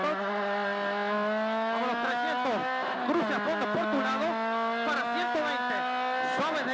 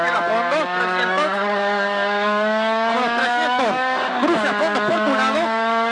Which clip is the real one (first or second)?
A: first